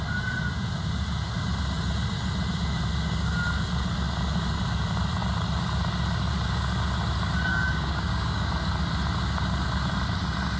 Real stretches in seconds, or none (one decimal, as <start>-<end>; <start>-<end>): 0.0-7.5; 8.5-10.6